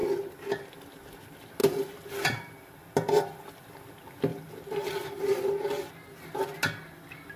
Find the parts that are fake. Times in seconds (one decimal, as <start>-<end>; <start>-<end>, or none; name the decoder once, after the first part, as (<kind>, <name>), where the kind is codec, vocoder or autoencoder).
1.6-3.5 (vocoder, BigVGAN v2); 4.3-5.9